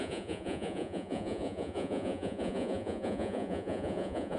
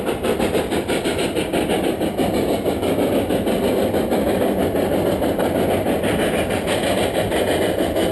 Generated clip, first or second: first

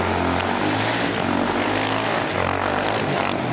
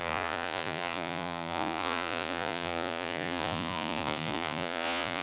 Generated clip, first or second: second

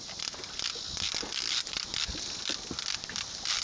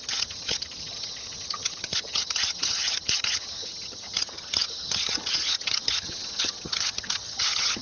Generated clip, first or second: second